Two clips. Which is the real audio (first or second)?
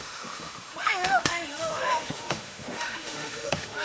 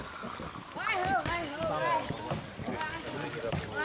second